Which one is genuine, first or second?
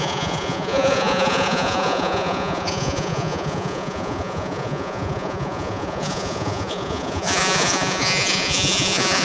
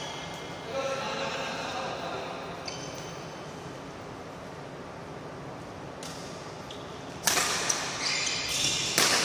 second